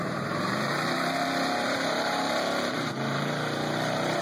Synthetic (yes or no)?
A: yes